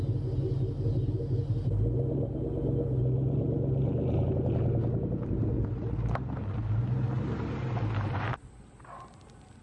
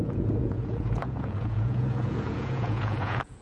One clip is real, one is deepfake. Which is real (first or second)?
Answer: first